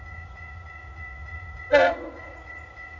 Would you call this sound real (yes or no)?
no